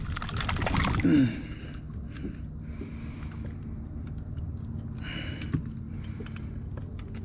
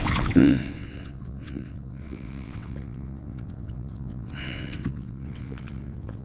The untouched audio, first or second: first